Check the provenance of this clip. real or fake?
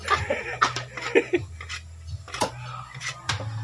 real